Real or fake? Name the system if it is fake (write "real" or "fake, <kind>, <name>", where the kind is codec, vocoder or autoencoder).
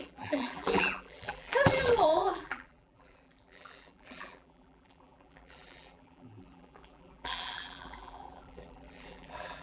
fake, vocoder, BigVGAN v2